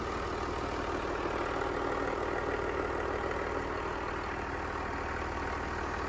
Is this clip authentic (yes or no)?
yes